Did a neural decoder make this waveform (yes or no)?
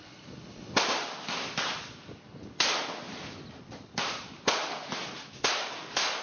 no